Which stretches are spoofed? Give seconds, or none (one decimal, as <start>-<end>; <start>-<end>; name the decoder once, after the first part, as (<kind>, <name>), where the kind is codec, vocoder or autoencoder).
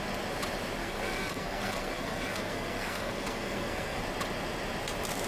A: 0.8-4.0 (codec, SNAC)